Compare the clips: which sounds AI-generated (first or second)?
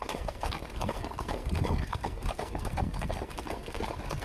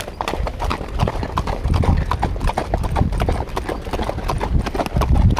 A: first